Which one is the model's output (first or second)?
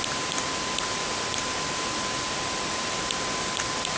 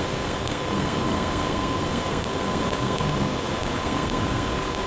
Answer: second